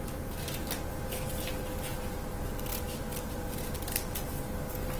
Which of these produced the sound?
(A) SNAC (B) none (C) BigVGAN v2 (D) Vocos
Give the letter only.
B